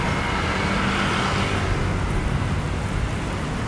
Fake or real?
real